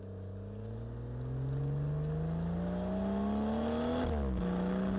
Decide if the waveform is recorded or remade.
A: recorded